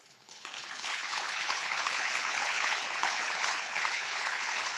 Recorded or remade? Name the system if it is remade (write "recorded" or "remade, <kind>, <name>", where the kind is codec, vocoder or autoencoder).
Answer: remade, codec, HILCodec